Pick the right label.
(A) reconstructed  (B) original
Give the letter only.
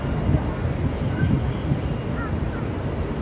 B